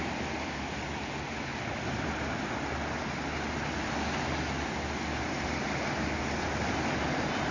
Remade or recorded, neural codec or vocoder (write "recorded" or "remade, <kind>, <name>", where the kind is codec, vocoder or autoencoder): recorded